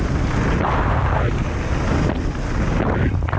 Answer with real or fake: real